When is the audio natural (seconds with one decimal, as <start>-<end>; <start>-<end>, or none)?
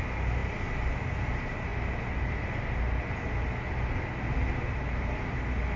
0.0-5.8